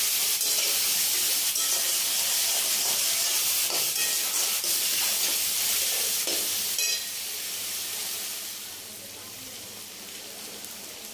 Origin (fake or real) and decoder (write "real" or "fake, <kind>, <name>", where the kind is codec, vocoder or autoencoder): real